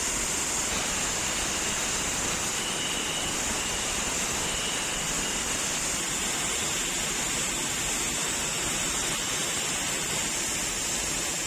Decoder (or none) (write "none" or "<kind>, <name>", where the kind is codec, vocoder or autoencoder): none